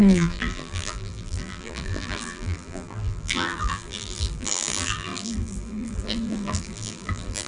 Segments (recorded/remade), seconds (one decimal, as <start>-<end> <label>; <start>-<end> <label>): 0.0-7.5 remade

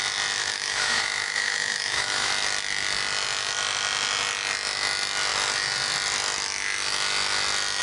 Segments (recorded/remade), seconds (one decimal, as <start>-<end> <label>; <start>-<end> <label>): 0.0-0.4 recorded; 0.4-2.3 remade; 2.3-7.8 recorded